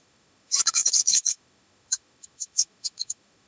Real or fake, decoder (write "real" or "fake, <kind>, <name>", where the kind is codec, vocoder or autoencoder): fake, autoencoder, DAC-VAE